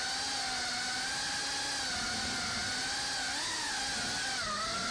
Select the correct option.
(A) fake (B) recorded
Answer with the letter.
B